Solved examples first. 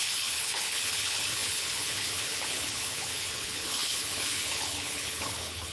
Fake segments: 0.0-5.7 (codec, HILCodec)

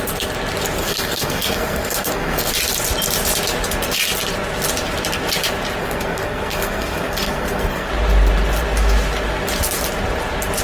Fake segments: 0.8-2.5 (codec, SNAC); 5.8-7.9

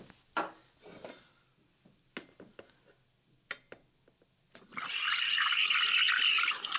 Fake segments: none

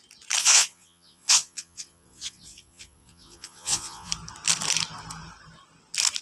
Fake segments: 0.4-4.1 (vocoder, Vocos)

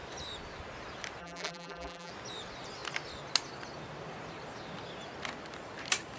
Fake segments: 1.2-2.1 (vocoder, BigVGAN v2)

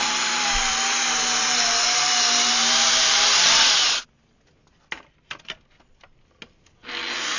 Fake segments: 0.0-2.1 (vocoder, BigVGAN v2); 2.6-3.6